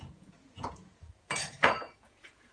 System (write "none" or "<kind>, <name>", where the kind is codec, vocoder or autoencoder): vocoder, Vocos